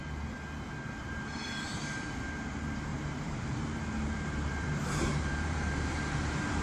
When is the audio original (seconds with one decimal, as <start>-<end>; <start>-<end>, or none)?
0.0-1.0; 2.3-2.9; 6.0-6.6